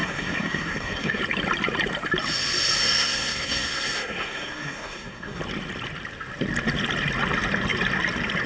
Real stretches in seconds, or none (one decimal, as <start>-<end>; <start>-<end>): 1.2-2.8; 5.4-8.5